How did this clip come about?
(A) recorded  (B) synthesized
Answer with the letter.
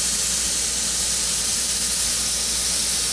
A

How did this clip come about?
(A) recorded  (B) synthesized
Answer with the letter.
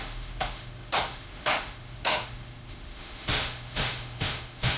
B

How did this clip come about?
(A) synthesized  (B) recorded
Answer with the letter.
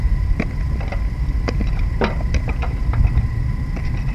B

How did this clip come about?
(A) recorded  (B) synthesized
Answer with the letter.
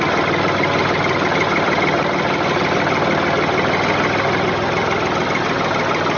A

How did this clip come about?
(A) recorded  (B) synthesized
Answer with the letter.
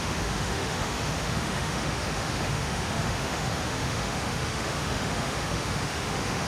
B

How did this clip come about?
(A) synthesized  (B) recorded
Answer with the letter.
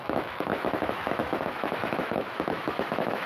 A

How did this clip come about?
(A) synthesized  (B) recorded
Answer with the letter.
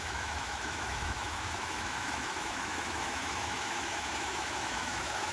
A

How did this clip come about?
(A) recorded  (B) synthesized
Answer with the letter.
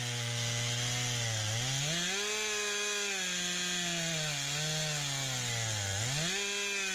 A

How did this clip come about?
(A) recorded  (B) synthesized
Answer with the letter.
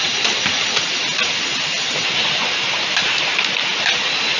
A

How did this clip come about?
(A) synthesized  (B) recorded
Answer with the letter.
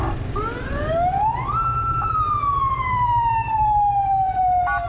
B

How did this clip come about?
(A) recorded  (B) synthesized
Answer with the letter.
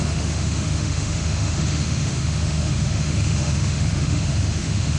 B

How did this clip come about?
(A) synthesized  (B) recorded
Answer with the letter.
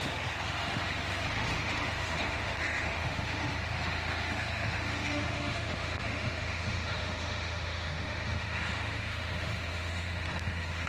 A